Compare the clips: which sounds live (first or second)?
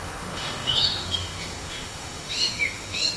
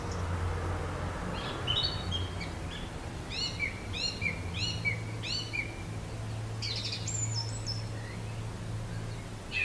second